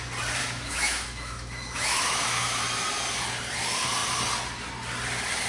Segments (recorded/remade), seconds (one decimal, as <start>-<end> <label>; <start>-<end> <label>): 0.0-0.4 recorded; 0.4-2.6 remade; 2.6-5.5 recorded